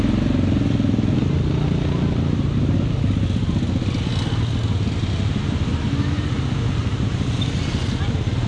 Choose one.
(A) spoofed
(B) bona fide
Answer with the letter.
B